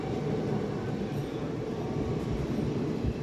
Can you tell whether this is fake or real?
fake